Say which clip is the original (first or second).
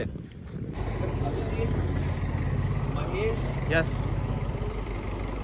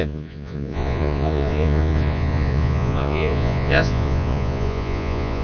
first